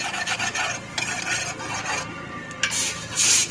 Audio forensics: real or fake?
real